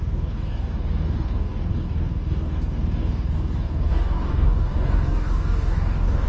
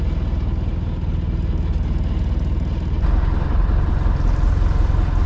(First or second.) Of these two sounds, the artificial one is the first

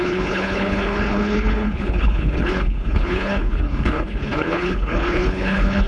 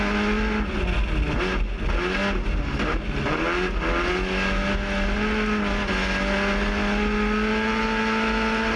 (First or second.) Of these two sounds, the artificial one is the first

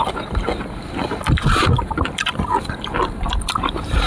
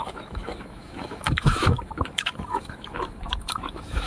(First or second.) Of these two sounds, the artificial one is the second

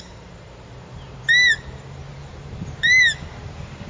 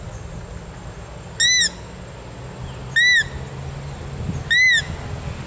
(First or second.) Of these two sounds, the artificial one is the first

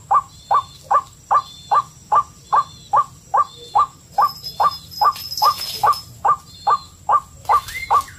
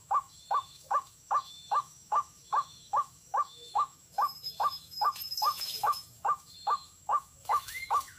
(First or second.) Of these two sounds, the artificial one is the second